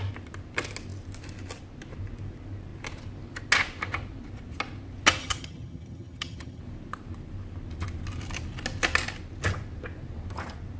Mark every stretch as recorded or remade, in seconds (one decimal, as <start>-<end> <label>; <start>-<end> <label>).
0.0-5.2 recorded; 5.2-6.6 remade; 6.6-10.8 recorded